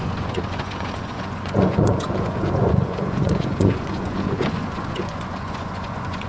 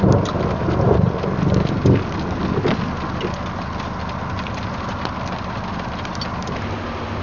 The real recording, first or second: second